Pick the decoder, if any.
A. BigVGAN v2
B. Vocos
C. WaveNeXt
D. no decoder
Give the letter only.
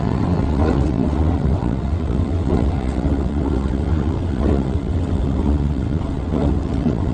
C